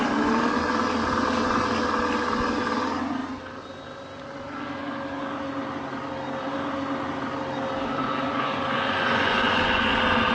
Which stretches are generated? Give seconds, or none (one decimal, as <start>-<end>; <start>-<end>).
8.0-9.9

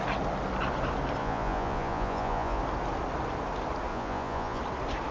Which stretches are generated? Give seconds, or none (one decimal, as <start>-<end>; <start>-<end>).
1.2-2.6; 3.9-4.6

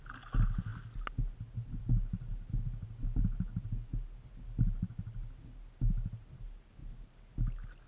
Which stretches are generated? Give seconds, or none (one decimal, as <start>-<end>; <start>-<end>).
none

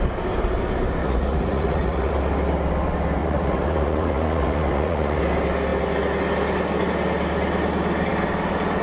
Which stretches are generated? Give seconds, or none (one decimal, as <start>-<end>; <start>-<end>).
1.0-2.1; 3.2-5.2

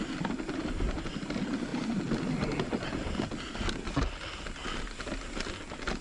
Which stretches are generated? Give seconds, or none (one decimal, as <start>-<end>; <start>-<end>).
none

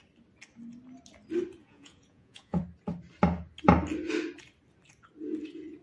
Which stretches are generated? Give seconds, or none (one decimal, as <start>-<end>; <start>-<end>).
1.6-2.6

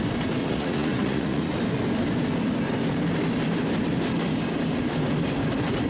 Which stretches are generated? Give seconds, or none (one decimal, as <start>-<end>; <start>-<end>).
0.4-1.6

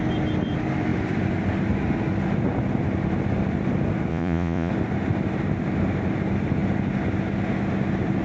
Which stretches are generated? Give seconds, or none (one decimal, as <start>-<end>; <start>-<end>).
4.1-4.7